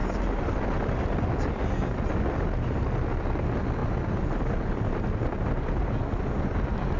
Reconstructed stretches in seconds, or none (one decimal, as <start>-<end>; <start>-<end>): none